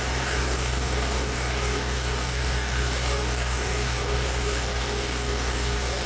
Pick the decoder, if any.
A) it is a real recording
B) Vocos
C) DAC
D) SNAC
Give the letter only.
C